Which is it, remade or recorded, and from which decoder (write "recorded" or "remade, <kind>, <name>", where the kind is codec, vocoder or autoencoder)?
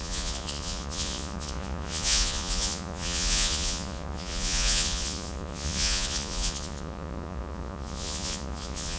remade, vocoder, Vocos